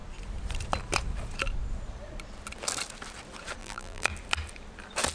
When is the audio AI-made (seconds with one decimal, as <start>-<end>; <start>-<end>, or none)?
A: 3.6-4.1